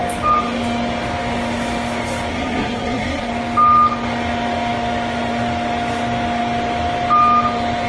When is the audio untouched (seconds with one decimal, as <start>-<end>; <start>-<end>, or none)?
0.0-2.3; 3.3-7.9